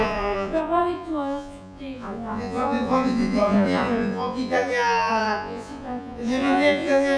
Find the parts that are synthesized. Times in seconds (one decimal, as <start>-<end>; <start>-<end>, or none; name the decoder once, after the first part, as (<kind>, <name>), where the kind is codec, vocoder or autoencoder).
0.0-7.2 (vocoder, Vocos)